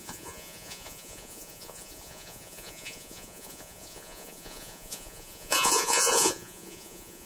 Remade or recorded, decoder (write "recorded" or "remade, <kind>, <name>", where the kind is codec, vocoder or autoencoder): remade, vocoder, Vocos